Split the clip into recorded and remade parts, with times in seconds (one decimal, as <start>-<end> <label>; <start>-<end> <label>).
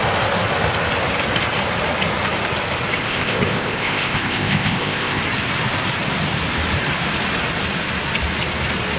0.0-3.0 recorded; 3.0-5.2 remade; 5.2-9.0 recorded